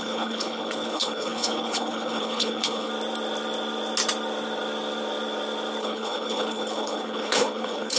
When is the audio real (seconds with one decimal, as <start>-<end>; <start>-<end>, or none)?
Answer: 2.9-5.8